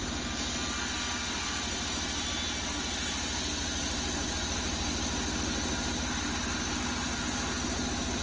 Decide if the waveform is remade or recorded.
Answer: recorded